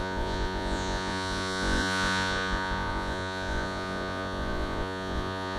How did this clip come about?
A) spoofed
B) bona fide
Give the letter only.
A